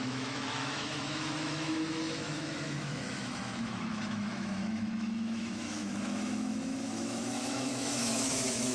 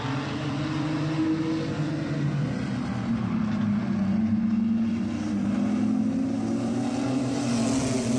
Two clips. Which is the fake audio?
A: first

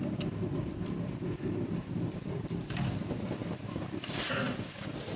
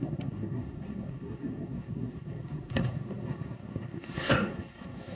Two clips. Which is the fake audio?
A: second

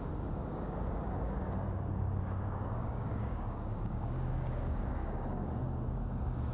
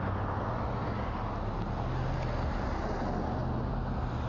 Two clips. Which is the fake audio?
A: first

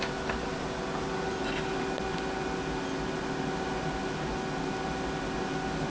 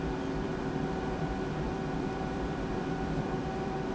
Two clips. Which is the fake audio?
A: second